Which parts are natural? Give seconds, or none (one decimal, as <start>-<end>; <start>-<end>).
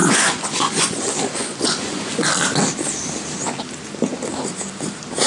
1.0-1.4; 2.1-5.3